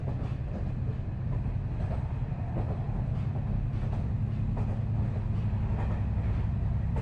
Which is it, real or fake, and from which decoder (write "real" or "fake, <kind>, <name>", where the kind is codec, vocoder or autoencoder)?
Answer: real